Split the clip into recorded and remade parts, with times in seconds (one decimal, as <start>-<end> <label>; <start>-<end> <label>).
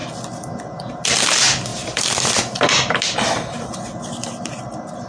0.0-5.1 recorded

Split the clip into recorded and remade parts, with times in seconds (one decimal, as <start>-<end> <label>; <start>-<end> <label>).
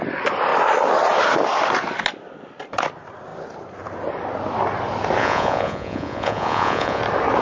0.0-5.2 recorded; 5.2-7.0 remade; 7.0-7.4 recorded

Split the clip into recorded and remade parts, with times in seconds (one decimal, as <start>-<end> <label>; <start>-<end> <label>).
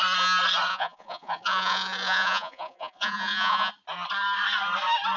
0.0-0.7 recorded; 0.7-3.7 remade; 3.7-5.2 recorded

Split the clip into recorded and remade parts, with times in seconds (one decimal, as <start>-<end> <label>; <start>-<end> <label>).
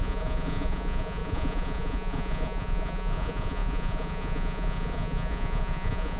0.0-6.2 remade